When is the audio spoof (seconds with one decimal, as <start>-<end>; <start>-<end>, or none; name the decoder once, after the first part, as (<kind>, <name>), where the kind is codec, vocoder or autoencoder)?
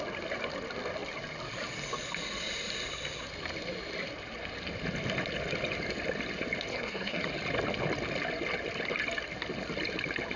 6.7-7.2 (codec, SNAC)